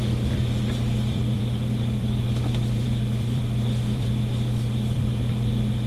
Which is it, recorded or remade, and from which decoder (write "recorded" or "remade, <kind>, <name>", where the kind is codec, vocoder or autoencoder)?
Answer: remade, vocoder, BigVGAN v2